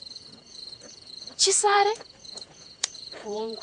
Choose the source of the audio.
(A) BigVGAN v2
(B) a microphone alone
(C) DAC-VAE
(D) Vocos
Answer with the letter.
D